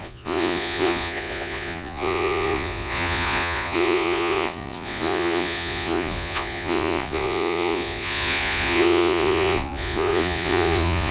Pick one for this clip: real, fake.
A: fake